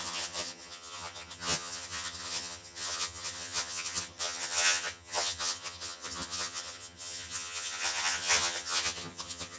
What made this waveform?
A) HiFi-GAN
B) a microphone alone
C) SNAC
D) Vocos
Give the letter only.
A